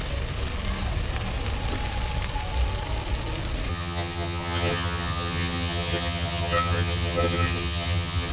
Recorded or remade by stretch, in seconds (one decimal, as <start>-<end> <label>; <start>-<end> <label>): 0.0-3.7 recorded; 3.7-8.3 remade